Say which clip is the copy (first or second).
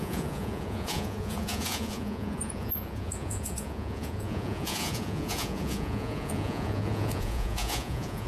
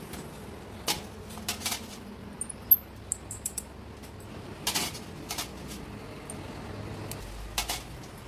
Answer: first